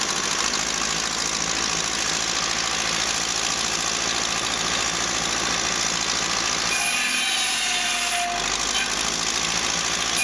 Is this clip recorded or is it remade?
recorded